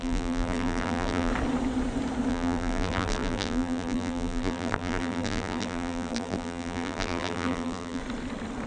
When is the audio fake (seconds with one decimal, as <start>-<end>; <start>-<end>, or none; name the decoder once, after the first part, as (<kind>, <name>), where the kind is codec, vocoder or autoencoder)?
0.0-1.3 (vocoder, BigVGAN v2); 2.3-8.0